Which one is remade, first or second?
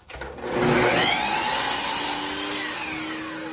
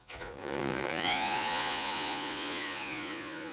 second